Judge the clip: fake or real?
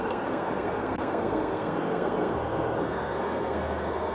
fake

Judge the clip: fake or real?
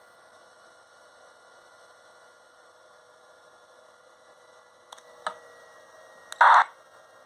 real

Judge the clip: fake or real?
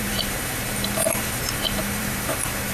fake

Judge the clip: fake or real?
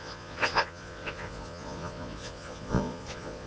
fake